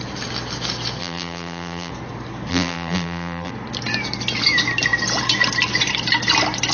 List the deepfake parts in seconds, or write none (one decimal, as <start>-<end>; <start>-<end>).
1.0-1.9; 2.5-3.5